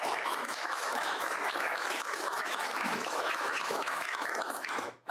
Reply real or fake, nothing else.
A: fake